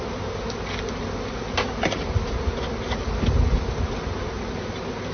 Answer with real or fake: real